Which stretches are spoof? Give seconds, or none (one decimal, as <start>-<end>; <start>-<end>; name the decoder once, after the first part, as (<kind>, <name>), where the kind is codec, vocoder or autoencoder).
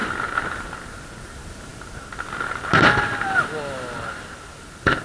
none